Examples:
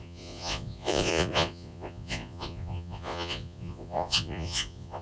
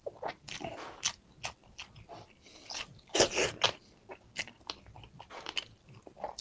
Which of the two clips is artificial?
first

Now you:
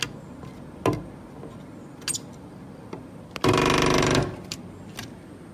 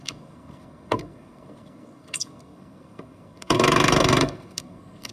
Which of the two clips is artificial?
second